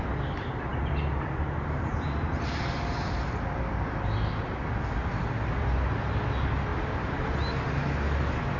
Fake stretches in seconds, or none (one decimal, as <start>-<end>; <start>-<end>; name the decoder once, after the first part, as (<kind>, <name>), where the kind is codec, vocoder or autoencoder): none